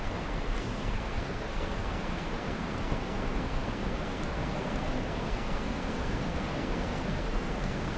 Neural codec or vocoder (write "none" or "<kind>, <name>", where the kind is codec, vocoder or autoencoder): codec, SNAC